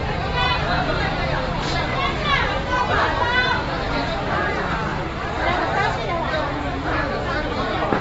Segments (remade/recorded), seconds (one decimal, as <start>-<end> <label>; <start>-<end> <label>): 0.0-1.9 recorded; 1.9-3.9 remade; 3.9-4.9 recorded; 4.9-5.6 remade; 5.6-8.0 recorded